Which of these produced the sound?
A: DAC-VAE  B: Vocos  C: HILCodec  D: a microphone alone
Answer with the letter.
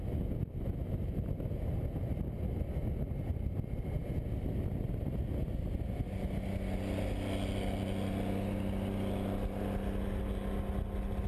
D